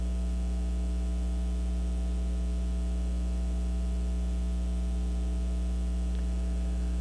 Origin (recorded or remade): recorded